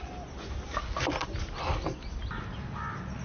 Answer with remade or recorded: recorded